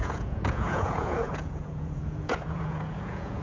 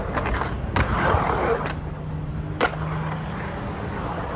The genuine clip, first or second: second